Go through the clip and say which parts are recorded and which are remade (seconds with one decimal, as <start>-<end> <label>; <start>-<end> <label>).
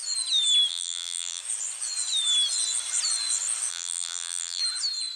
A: 0.0-0.7 recorded; 0.7-1.4 remade; 1.4-3.7 recorded; 3.7-4.6 remade; 4.6-5.2 recorded